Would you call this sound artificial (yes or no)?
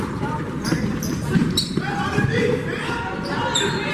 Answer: yes